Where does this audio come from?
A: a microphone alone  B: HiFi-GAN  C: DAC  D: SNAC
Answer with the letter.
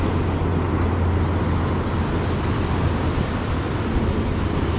A